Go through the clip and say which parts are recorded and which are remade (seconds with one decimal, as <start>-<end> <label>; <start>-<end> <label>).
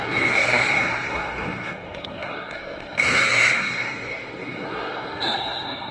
0.0-5.9 remade